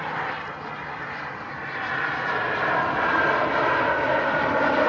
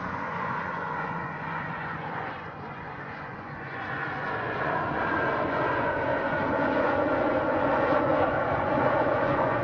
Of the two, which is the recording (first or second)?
first